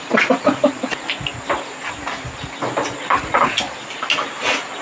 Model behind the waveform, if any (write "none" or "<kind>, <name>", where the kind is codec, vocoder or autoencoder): none